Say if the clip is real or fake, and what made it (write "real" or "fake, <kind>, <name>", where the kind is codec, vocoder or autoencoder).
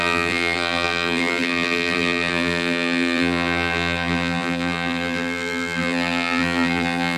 fake, vocoder, BigVGAN v2